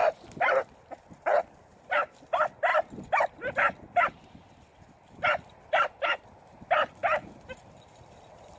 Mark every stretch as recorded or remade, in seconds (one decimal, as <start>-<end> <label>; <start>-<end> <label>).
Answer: 0.0-8.6 recorded